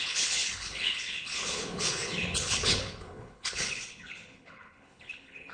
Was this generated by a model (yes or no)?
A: yes